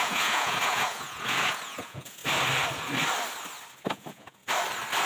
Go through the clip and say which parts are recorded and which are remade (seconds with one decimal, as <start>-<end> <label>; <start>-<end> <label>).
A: 0.0-2.2 remade; 2.2-3.9 recorded; 3.9-4.4 remade; 4.4-5.1 recorded